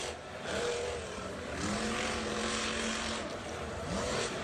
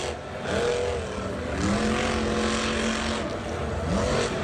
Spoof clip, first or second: first